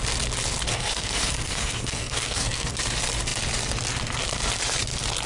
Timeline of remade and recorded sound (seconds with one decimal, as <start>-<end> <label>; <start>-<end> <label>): 0.0-0.7 recorded; 0.7-2.7 remade; 2.7-5.3 recorded